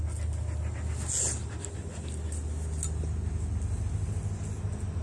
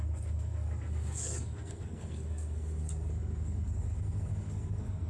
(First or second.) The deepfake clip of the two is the second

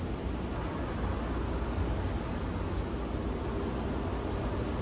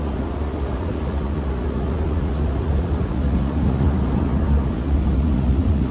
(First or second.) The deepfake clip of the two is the second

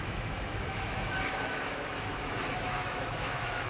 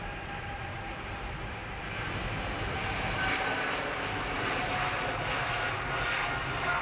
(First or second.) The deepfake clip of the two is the first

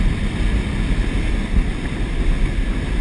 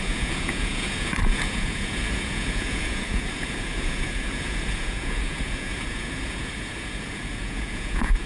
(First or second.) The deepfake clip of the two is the second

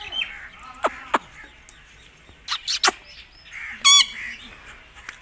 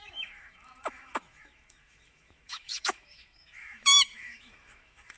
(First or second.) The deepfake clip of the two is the second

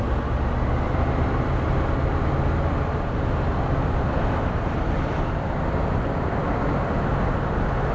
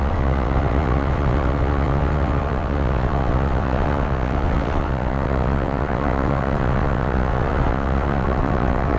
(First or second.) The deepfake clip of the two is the second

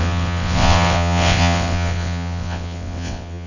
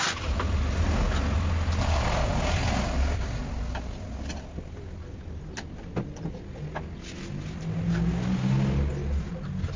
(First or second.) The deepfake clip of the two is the first